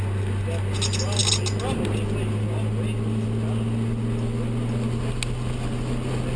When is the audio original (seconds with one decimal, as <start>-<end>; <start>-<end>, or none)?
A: 0.0-6.4